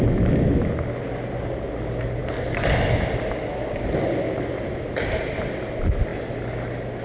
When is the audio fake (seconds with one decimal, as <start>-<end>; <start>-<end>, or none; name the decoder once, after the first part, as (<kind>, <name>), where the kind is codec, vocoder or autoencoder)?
none